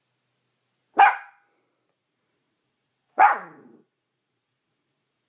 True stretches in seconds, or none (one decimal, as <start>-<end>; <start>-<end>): 0.0-2.0